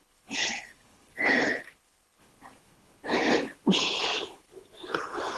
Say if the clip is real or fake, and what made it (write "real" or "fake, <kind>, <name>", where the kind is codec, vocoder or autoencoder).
fake, codec, HILCodec